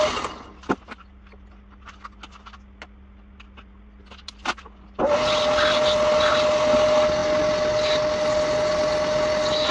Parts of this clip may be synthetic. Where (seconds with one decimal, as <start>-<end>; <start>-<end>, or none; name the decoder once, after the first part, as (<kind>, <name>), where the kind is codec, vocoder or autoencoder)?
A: none